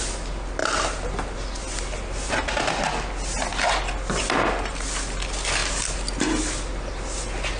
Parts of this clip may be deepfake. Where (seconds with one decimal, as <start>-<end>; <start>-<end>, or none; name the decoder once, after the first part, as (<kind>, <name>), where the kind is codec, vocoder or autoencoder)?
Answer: none